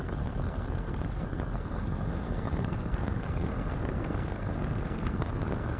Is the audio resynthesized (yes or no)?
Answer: yes